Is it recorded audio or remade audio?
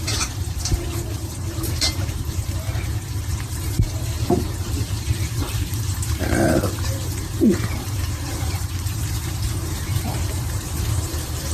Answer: remade